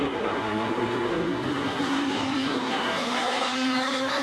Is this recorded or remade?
remade